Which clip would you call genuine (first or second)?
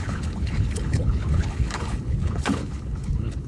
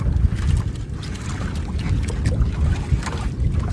second